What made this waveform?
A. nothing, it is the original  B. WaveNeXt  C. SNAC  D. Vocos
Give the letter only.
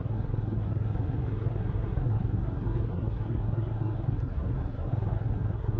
C